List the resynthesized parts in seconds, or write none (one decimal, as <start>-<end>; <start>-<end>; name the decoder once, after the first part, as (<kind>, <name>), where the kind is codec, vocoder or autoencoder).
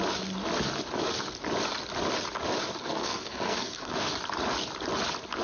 2.8-4.1 (codec, SNAC)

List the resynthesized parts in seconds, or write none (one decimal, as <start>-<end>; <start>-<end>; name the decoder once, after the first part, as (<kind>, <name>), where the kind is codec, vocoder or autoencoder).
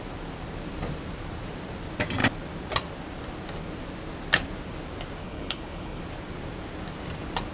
5.2-6.0 (codec, HILCodec)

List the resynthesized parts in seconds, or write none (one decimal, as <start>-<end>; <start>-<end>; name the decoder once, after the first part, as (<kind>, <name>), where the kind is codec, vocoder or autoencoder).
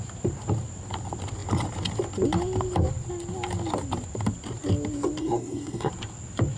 5.2-5.9 (codec, SNAC)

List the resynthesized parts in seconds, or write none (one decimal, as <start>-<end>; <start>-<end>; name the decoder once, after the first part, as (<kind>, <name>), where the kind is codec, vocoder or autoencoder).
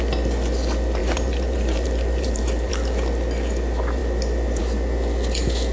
1.0-2.7 (vocoder, BigVGAN v2)